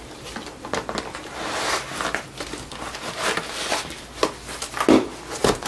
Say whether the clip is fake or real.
real